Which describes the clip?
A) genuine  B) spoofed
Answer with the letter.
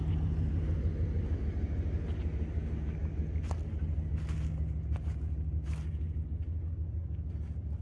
A